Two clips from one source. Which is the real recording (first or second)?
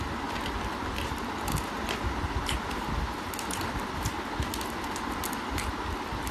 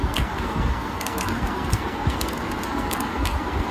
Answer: first